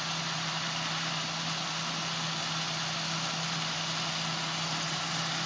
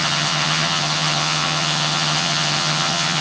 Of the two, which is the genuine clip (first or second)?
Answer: first